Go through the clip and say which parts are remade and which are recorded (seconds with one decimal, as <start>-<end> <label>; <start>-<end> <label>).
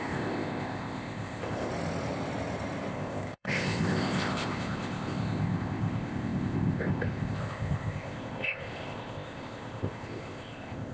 0.0-1.7 remade; 1.7-2.9 recorded; 2.9-10.9 remade